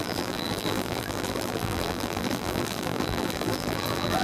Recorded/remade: remade